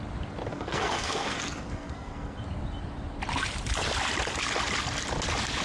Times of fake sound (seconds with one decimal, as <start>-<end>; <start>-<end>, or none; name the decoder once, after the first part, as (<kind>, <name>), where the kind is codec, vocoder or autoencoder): 0.5-2.4 (codec, SNAC)